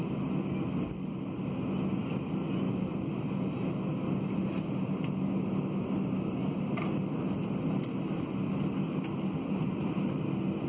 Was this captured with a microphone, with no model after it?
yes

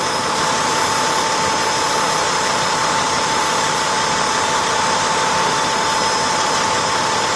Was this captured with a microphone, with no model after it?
yes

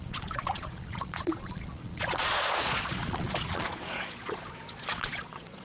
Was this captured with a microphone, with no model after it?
no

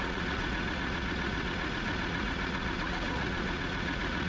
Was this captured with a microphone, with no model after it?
no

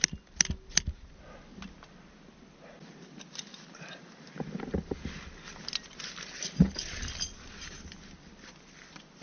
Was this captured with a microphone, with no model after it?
yes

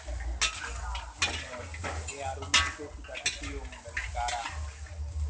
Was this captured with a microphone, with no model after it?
yes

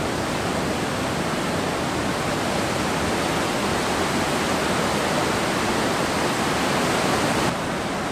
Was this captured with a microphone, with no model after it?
yes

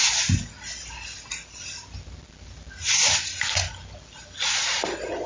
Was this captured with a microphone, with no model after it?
yes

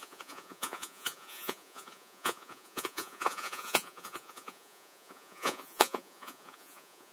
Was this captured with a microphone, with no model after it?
no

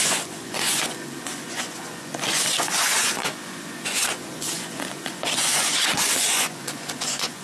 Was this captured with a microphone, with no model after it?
no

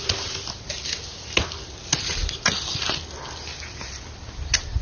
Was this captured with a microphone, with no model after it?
yes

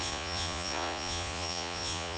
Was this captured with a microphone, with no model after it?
no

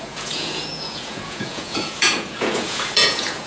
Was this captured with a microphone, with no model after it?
no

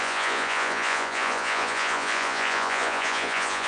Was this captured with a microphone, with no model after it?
no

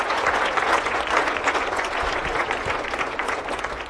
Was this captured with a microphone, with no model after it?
no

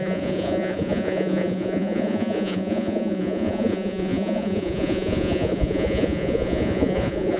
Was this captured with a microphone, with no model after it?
no